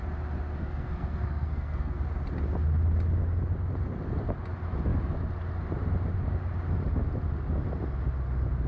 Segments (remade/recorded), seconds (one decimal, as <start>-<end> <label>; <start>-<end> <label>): 0.0-0.6 recorded; 0.6-2.0 remade; 2.0-8.7 recorded